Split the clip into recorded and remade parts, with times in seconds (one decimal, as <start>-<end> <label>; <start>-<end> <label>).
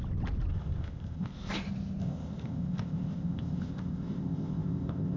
0.0-0.5 recorded; 0.5-1.5 remade; 1.5-2.0 recorded; 2.0-5.2 remade